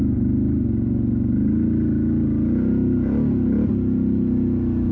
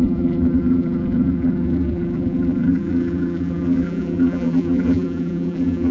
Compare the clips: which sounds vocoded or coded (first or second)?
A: second